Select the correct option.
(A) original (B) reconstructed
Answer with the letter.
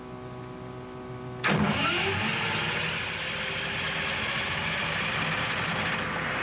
A